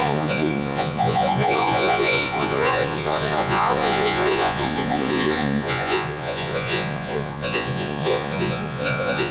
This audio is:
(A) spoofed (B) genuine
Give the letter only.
A